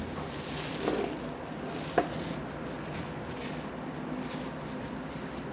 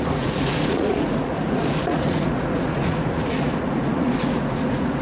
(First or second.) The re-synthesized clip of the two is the second